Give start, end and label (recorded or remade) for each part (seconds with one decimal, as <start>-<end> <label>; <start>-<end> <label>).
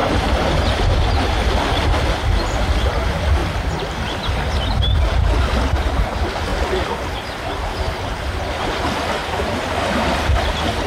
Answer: 0.0-1.6 remade; 1.6-9.2 recorded; 9.2-10.4 remade; 10.4-10.9 recorded